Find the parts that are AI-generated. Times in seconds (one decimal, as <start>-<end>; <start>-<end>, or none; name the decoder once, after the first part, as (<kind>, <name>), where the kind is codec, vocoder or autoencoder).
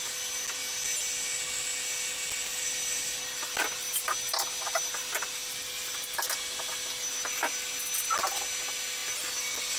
none